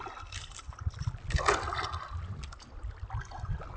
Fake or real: real